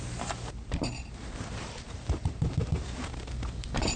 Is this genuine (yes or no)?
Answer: no